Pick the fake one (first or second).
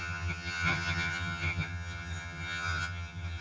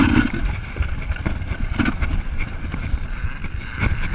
first